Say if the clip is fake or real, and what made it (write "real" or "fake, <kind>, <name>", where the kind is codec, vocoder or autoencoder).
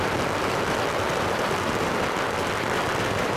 fake, vocoder, BigVGAN v2